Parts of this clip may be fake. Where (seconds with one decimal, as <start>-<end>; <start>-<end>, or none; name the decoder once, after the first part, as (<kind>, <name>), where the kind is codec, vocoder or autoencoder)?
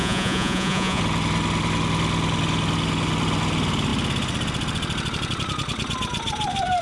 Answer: 0.0-1.0 (vocoder, Vocos)